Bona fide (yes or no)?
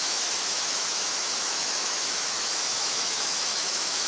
no